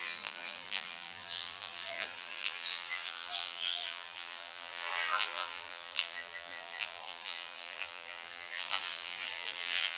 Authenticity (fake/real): fake